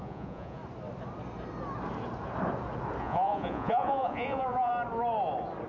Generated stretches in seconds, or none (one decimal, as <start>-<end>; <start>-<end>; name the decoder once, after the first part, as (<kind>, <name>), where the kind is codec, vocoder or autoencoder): 0.0-0.6 (vocoder, Vocos); 3.0-4.7